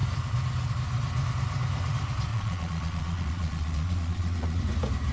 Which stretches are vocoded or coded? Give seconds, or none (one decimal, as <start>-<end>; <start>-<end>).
2.3-4.6